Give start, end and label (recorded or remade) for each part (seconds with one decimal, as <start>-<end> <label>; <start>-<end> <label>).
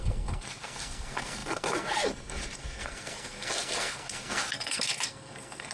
0.0-5.7 remade